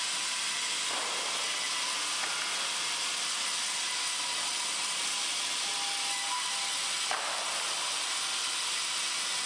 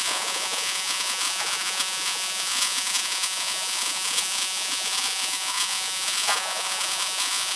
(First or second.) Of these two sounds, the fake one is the second